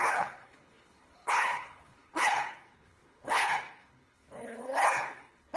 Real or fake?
fake